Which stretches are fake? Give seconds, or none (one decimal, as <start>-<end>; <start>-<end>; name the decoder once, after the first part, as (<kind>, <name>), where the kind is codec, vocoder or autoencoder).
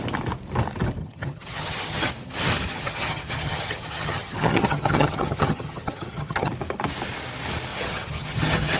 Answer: 1.0-2.1 (vocoder, HiFi-GAN); 2.7-6.5; 7.7-8.8